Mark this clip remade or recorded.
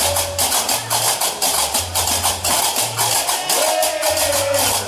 recorded